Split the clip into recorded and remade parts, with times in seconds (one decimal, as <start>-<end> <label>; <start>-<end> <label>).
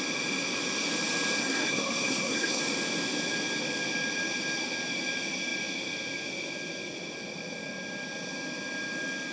0.0-1.4 recorded; 1.4-2.6 remade; 2.6-9.3 recorded